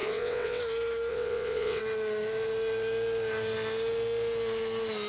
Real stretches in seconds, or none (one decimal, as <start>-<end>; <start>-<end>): 0.6-1.1; 1.8-5.1